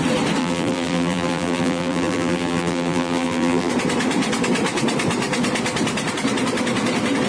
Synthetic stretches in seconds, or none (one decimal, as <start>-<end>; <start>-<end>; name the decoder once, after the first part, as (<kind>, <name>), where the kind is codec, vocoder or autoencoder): 0.4-3.7 (vocoder, BigVGAN v2)